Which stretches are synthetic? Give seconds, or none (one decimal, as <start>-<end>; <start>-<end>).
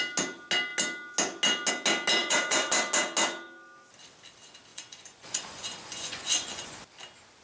2.2-2.7; 4.7-6.8